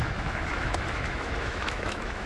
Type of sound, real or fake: fake